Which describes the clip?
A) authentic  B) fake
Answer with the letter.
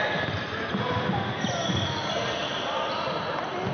A